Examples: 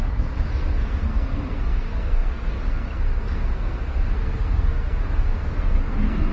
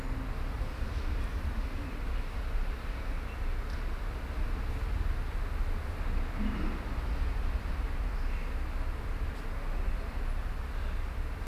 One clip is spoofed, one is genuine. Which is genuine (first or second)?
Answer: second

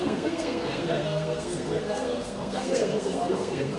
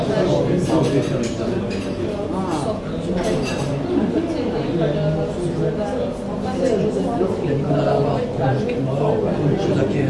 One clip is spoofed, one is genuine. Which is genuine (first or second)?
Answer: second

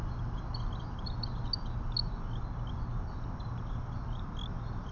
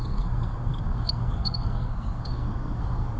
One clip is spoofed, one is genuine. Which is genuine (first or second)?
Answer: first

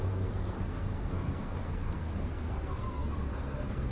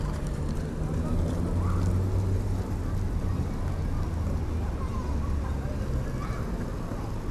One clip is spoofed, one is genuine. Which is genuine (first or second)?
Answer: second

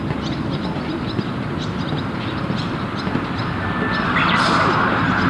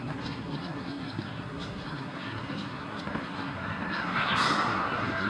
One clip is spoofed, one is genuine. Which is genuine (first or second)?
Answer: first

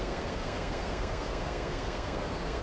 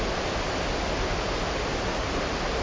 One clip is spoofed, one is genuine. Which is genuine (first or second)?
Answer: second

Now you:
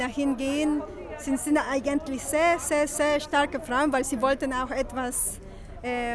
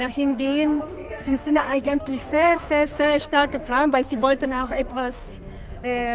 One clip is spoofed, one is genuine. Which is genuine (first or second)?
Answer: first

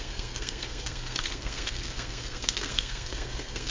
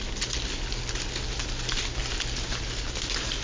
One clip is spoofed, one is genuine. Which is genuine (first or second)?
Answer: second